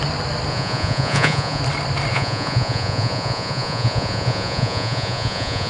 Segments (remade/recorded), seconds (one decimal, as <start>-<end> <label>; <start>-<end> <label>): 0.0-0.5 recorded; 0.5-1.6 remade; 1.6-2.1 recorded; 2.1-5.7 remade